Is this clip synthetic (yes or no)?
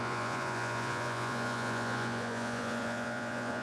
yes